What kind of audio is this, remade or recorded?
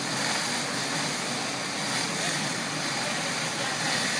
recorded